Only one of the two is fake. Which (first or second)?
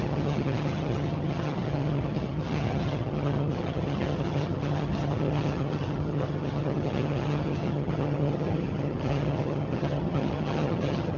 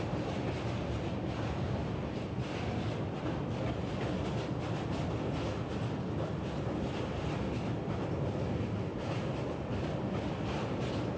first